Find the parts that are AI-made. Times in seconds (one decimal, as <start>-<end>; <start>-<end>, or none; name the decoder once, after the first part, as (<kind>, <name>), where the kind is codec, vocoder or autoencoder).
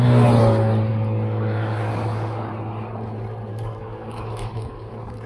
0.9-2.5 (codec, DAC); 3.5-5.3